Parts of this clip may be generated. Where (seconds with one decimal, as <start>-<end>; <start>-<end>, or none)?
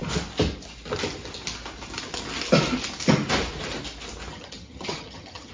4.3-5.5